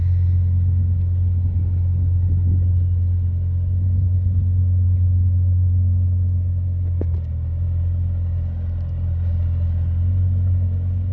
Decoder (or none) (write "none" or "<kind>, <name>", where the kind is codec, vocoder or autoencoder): none